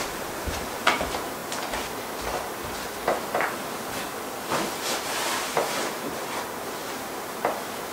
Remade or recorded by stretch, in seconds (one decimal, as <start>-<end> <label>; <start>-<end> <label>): 0.0-1.4 remade; 1.4-5.0 recorded; 5.0-7.9 remade